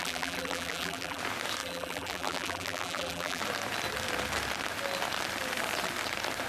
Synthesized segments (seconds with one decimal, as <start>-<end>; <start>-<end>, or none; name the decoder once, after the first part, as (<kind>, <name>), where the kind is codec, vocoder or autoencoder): 0.0-1.2 (vocoder, BigVGAN v2); 1.6-3.4